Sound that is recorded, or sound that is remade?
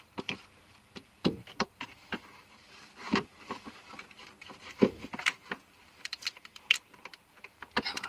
remade